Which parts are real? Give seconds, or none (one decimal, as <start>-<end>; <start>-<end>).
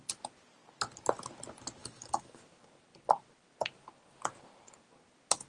0.0-1.8; 2.4-5.5